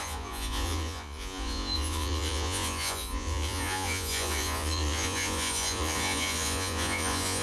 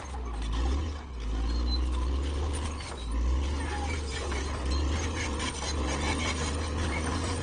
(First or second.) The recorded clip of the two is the second